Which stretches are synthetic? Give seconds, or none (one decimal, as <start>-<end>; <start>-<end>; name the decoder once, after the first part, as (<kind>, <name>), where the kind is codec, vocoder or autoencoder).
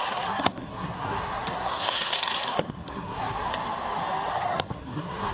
0.0-3.5 (codec, SNAC); 4.3-5.3